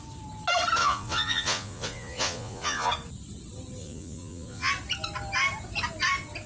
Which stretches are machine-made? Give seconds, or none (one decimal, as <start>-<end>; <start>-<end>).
0.8-2.9; 3.8-4.7